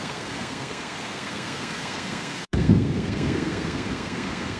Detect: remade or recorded remade